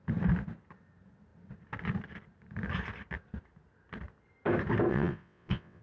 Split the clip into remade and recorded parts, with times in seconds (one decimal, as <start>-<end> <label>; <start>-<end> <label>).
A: 0.0-4.9 recorded; 4.9-5.8 remade